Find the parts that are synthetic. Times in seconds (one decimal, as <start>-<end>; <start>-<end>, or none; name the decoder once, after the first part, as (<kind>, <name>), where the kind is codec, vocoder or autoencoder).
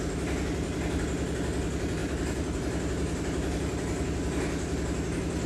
none